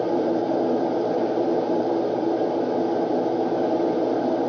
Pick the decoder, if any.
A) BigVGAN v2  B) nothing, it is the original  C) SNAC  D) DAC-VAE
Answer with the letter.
B